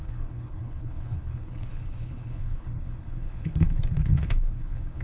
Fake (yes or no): yes